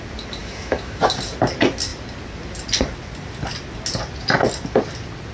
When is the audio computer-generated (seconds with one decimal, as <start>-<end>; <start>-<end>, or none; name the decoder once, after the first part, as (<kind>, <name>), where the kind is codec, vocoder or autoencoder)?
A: 0.4-1.0 (autoencoder, DAC-VAE)